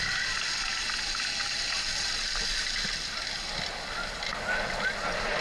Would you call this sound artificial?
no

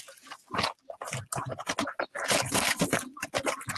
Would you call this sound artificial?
no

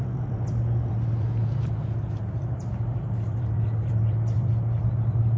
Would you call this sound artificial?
yes